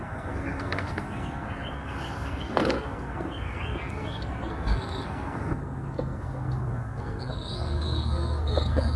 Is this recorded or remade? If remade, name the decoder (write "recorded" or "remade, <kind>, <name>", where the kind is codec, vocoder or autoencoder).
remade, codec, SNAC